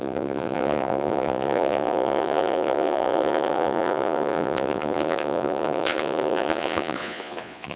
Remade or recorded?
remade